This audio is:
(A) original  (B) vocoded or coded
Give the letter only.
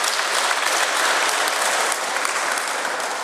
B